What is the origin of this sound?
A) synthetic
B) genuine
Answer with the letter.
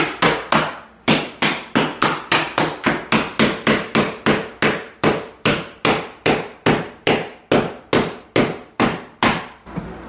B